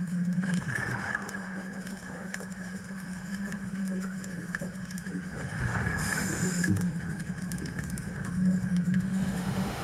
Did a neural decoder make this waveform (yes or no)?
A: yes